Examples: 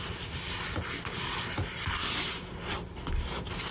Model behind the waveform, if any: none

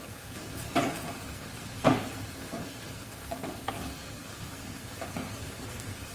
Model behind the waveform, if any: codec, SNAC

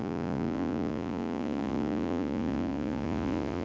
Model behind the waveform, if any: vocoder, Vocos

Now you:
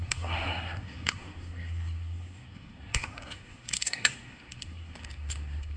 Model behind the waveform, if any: codec, SNAC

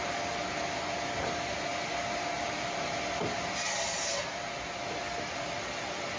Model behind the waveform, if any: none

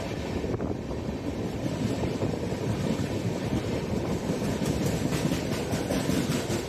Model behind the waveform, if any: vocoder, BigVGAN v2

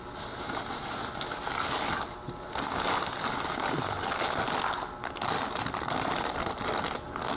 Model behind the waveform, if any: none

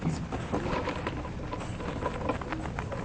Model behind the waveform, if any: vocoder, BigVGAN v2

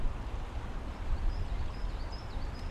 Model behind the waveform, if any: none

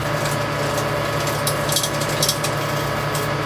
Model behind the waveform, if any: none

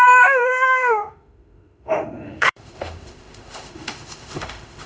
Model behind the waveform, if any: autoencoder, DAC-VAE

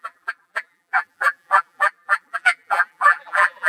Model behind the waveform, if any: vocoder, BigVGAN v2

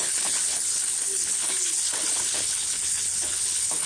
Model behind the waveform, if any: codec, HILCodec